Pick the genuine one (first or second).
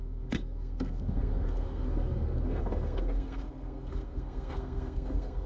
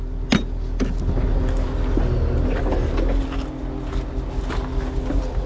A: second